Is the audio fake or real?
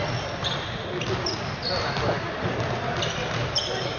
real